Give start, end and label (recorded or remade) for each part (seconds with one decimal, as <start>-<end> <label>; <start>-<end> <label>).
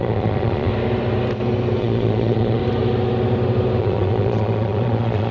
0.0-0.7 remade; 0.7-1.8 recorded; 1.8-2.6 remade; 2.6-3.8 recorded; 3.8-5.3 remade